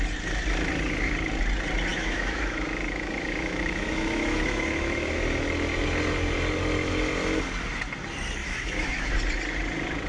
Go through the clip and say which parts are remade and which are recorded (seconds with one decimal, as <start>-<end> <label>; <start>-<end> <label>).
0.0-1.9 recorded; 1.9-5.2 remade; 5.2-8.4 recorded; 8.4-9.1 remade; 9.1-10.1 recorded